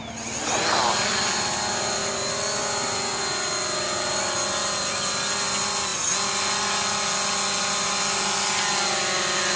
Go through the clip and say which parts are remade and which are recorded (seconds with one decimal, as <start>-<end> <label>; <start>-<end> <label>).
0.0-9.6 recorded